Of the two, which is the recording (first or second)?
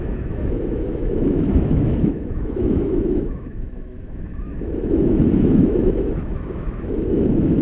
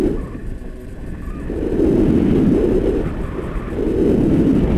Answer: second